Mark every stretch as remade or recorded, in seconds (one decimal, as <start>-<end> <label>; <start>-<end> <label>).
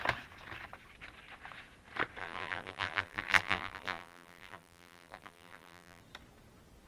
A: 0.0-2.2 recorded; 2.2-6.0 remade; 6.0-6.9 recorded